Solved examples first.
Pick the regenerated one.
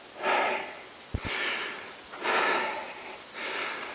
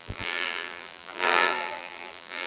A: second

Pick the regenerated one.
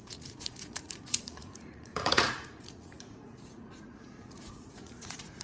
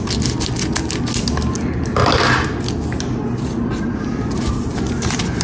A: first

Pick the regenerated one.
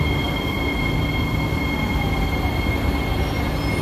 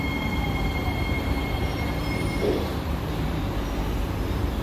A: second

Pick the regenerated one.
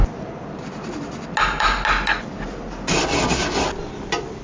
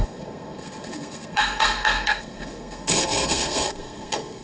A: second